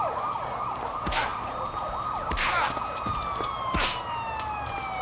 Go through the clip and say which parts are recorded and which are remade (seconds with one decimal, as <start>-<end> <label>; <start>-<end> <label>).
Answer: 0.0-5.0 recorded

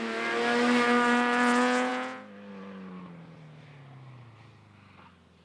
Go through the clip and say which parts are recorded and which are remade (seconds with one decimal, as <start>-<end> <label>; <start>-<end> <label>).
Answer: 0.0-5.4 recorded

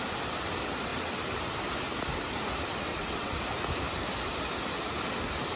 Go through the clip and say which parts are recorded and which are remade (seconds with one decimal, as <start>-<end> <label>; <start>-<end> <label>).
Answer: 0.0-2.9 recorded; 2.9-3.4 remade; 3.4-5.6 recorded

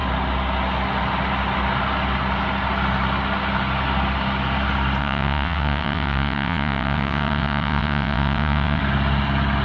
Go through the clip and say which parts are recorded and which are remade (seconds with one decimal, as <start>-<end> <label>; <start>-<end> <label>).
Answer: 0.0-5.0 recorded; 5.0-8.8 remade; 8.8-9.6 recorded

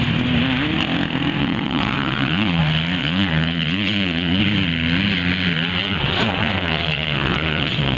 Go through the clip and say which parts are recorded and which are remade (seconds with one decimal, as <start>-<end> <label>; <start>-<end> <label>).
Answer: 0.0-1.4 recorded; 1.4-2.6 remade; 2.6-3.0 recorded; 3.0-4.4 remade; 4.4-5.8 recorded; 5.8-8.0 remade

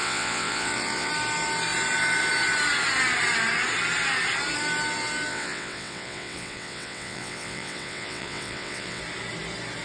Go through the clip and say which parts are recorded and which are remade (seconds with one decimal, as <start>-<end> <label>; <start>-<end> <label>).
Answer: 0.0-1.1 remade; 1.1-5.3 recorded; 5.3-9.0 remade; 9.0-9.8 recorded

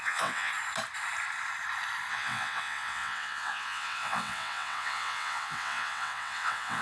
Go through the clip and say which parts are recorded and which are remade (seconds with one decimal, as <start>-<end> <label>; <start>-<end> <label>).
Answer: 0.0-0.5 remade; 0.5-2.1 recorded; 2.1-6.8 remade